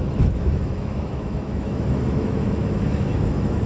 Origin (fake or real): fake